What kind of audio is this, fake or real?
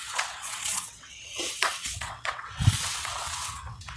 fake